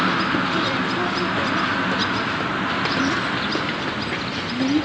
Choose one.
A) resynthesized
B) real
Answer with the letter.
B